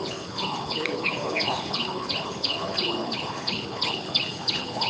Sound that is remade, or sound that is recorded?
remade